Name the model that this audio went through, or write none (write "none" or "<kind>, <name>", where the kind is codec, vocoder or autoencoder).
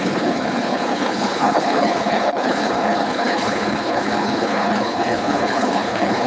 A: codec, HILCodec